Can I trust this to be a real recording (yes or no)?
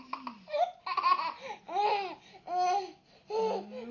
yes